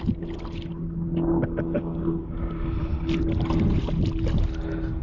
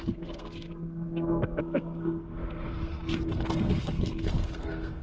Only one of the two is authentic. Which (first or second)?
first